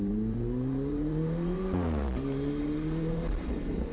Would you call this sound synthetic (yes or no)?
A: yes